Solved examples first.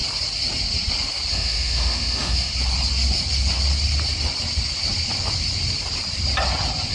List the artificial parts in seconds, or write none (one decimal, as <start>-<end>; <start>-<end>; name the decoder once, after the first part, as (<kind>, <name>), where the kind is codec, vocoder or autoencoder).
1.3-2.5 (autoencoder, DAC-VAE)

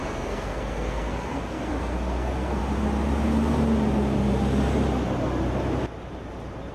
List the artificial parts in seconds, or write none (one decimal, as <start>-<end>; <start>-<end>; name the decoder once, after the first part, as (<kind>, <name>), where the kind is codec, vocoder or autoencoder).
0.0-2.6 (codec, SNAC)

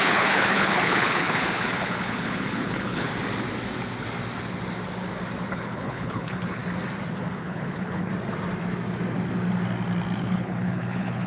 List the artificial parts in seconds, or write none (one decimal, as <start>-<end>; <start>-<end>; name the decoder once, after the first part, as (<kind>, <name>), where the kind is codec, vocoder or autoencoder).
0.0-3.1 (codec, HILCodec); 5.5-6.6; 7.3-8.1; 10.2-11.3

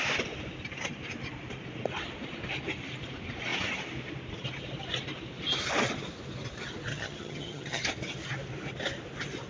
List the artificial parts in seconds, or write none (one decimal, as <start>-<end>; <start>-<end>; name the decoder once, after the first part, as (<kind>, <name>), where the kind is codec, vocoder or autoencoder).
6.9-7.8 (vocoder, HiFi-GAN)

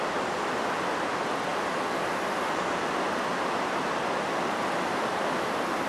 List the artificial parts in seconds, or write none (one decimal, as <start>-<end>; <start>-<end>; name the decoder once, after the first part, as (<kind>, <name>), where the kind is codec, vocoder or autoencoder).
none

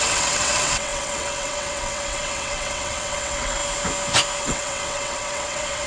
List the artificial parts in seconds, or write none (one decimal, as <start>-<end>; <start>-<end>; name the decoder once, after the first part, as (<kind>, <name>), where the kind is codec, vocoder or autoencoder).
0.0-3.6 (vocoder, WaveNeXt); 4.4-5.9

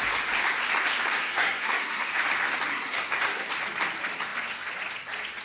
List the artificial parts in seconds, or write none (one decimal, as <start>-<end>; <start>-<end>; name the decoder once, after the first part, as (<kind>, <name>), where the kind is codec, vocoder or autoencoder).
1.1-2.1 (codec, SNAC); 2.7-3.5

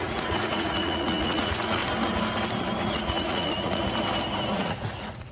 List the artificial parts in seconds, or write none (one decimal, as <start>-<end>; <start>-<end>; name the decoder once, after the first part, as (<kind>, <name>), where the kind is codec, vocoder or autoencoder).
0.0-1.8 (vocoder, Vocos); 2.8-3.8; 4.5-5.3